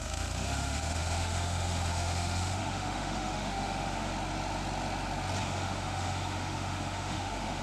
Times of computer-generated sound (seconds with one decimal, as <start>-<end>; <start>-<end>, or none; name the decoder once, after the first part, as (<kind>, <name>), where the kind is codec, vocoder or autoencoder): 0.0-4.1 (autoencoder, DAC-VAE); 5.4-7.6